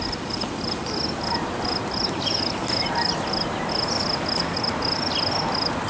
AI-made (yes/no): no